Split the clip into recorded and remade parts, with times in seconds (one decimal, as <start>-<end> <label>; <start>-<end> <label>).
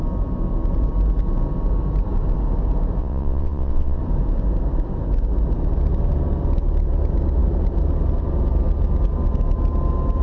0.0-3.0 recorded; 3.0-4.0 remade; 4.0-10.2 recorded